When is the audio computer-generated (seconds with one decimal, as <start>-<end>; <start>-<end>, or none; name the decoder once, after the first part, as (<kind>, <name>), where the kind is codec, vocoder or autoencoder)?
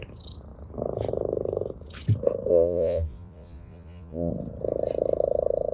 2.5-4.3 (vocoder, Vocos)